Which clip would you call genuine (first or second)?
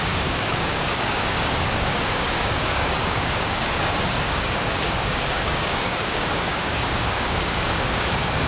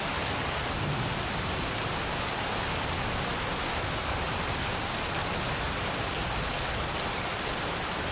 second